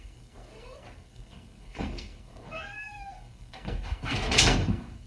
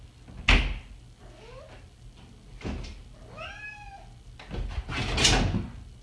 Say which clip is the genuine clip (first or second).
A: second